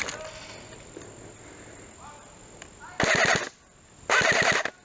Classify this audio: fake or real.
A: real